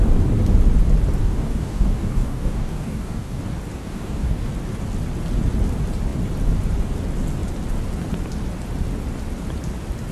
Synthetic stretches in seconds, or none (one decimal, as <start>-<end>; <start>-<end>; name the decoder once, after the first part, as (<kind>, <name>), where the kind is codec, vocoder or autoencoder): 1.2-3.4 (codec, DAC); 3.8-4.5